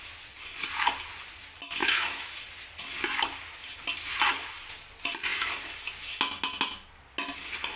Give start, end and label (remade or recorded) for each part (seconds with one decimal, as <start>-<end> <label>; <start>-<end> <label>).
0.0-1.8 recorded; 1.8-2.3 remade; 2.3-7.8 recorded